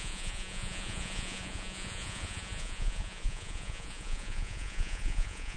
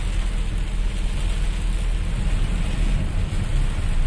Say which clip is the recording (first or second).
second